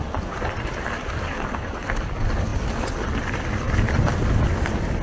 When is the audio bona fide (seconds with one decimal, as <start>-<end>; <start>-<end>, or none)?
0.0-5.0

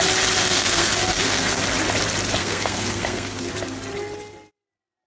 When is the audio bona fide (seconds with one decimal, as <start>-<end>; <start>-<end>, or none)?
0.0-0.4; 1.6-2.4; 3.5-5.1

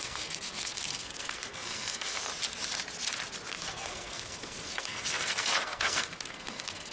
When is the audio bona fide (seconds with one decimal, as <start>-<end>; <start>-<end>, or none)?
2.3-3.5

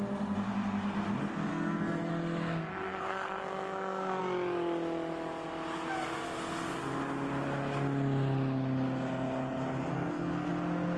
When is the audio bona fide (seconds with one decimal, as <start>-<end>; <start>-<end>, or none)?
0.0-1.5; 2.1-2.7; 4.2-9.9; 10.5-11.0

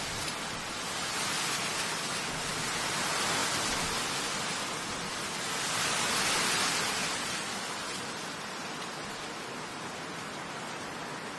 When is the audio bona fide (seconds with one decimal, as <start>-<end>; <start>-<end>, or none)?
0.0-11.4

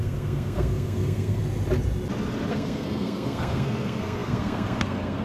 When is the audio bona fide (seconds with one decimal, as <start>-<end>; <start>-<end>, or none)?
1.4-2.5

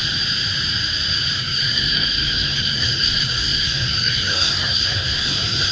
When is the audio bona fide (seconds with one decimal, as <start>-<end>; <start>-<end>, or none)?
0.0-1.4

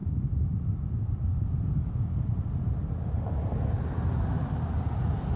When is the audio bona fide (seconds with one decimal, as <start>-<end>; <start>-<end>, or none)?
0.0-5.4